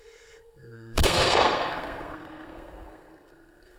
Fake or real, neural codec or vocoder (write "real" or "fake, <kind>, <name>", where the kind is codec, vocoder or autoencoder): fake, codec, SNAC